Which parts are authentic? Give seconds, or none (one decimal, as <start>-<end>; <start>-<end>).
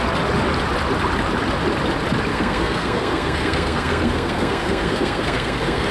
0.0-2.3